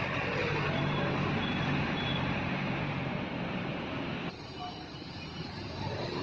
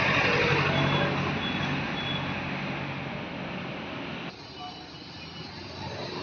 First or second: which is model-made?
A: first